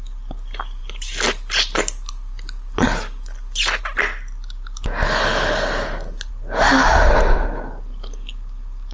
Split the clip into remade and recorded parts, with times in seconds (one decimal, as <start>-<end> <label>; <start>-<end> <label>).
0.0-8.9 recorded